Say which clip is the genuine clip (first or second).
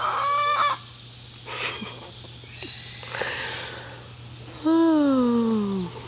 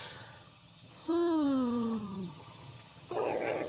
first